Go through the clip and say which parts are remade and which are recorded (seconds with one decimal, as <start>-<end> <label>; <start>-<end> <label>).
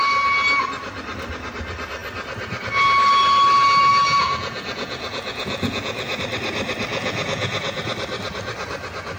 0.0-3.9 recorded; 3.9-6.2 remade; 6.2-6.9 recorded; 6.9-7.8 remade; 7.8-9.2 recorded